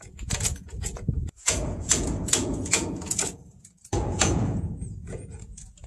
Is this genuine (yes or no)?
no